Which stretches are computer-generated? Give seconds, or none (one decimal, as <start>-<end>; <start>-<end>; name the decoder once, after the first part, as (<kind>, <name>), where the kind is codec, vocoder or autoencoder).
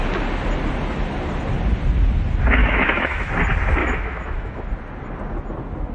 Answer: 2.6-3.3 (autoencoder, DAC-VAE); 3.8-4.6